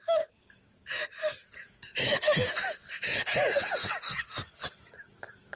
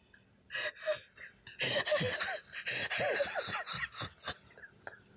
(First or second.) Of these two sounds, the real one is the second